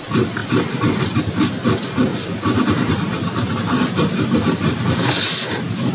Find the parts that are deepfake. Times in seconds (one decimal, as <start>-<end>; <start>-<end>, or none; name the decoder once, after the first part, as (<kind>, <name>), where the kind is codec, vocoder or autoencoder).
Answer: none

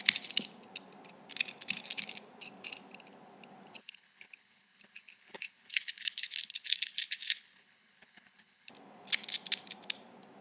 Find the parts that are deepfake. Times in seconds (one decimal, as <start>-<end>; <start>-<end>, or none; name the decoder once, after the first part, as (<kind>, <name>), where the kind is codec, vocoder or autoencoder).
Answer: 3.8-8.7 (codec, HILCodec)

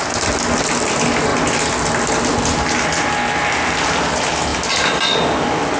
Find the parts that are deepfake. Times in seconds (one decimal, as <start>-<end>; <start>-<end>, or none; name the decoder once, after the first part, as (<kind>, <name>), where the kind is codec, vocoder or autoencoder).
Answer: none

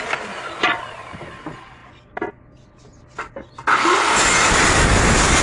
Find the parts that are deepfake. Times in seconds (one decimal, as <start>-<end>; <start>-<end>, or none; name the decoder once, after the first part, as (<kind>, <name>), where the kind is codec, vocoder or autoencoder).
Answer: none

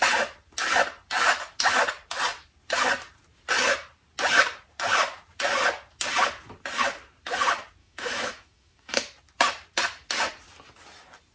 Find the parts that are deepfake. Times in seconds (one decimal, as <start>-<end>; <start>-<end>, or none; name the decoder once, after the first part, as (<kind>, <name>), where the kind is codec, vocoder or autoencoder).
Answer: 7.8-8.9 (autoencoder, DAC-VAE)